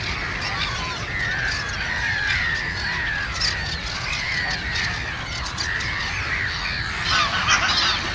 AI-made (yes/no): no